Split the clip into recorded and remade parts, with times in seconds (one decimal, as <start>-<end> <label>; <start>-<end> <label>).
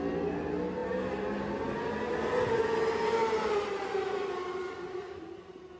0.0-3.2 recorded; 3.2-5.8 remade